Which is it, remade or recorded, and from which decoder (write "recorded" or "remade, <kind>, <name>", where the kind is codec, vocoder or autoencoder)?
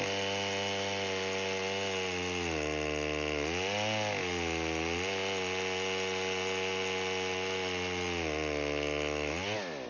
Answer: recorded